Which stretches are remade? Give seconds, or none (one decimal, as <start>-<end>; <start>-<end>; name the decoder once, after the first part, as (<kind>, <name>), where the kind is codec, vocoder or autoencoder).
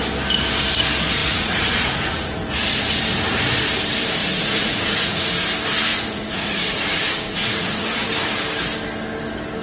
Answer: 1.2-3.0 (vocoder, Vocos); 4.2-5.3; 5.9-8.1